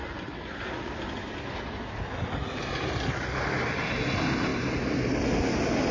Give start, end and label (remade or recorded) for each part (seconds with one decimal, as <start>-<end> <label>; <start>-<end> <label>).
0.0-5.9 recorded